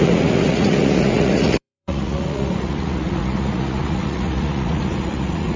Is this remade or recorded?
remade